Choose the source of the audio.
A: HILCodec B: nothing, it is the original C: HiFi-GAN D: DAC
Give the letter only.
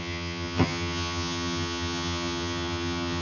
C